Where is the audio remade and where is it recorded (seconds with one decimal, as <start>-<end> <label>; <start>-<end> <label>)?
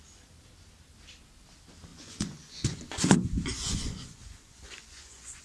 0.0-1.9 recorded; 1.9-5.4 remade